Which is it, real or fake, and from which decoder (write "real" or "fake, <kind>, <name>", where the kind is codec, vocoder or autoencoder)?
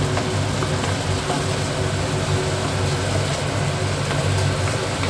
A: real